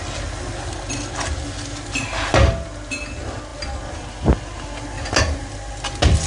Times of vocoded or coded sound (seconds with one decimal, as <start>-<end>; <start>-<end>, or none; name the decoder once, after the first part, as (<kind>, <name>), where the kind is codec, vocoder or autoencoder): none